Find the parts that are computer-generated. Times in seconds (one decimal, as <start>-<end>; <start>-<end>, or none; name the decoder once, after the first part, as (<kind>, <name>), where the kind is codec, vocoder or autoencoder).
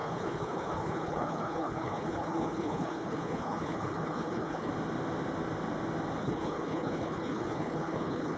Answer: 0.0-4.7 (codec, HILCodec); 6.2-8.4